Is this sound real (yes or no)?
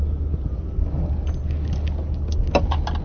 yes